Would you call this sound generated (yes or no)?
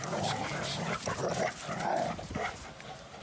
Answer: yes